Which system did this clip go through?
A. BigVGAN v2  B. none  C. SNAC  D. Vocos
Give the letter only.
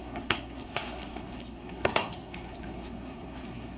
C